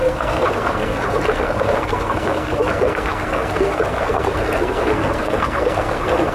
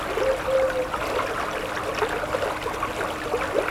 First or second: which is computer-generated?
first